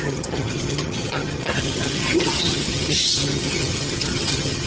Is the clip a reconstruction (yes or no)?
yes